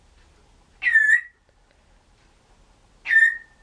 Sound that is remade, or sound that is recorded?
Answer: recorded